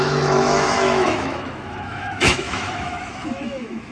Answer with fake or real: fake